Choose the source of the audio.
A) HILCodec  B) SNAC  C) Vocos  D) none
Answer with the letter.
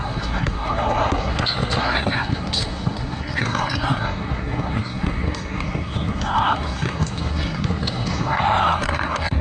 B